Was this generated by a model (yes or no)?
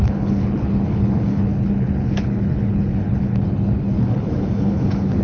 yes